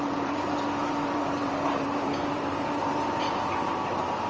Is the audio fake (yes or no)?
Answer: yes